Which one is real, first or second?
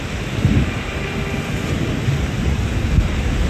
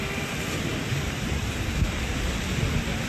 first